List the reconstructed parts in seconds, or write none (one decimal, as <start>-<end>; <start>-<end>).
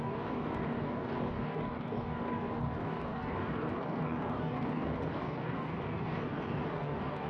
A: 0.0-7.3